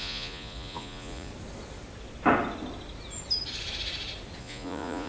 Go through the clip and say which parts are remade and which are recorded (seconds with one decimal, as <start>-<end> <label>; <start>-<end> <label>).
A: 0.0-1.3 remade; 1.3-4.4 recorded; 4.4-5.1 remade